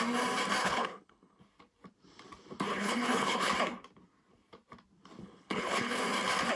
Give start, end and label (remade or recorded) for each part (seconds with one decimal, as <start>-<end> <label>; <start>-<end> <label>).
0.0-0.6 recorded; 0.6-1.4 remade; 1.4-2.7 recorded; 2.7-3.5 remade; 3.5-5.2 recorded; 5.2-6.0 remade; 6.0-6.6 recorded